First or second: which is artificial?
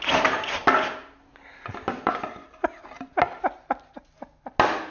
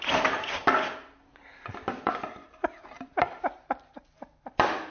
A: second